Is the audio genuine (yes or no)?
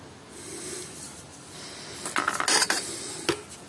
yes